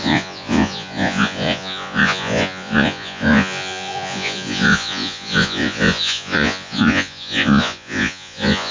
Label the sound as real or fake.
fake